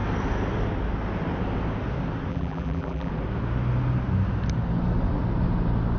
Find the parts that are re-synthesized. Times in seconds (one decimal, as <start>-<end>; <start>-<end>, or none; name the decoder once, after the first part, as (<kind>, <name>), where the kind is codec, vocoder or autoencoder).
2.3-3.1 (vocoder, BigVGAN v2)